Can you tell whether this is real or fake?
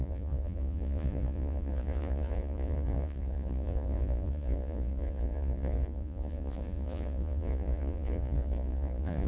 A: fake